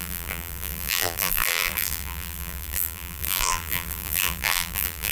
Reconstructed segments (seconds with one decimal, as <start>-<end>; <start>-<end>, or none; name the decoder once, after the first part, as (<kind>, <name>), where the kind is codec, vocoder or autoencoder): 0.0-5.1 (vocoder, BigVGAN v2)